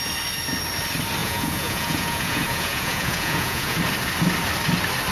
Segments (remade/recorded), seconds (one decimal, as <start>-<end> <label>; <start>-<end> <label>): 0.0-1.2 recorded; 1.2-3.8 remade; 3.8-5.1 recorded